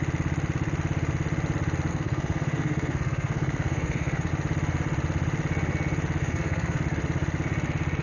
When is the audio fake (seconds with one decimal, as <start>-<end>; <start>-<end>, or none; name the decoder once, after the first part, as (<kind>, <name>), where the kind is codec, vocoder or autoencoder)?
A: 1.9-4.3 (codec, SNAC); 6.2-6.8